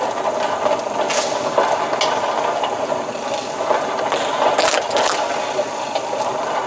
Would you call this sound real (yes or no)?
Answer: yes